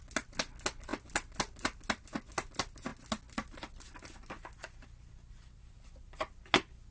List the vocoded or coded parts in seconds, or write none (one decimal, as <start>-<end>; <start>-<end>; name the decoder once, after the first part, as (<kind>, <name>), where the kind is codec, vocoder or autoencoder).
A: none